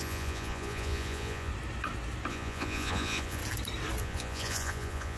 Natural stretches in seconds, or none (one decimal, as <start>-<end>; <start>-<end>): 1.5-2.3; 3.4-4.0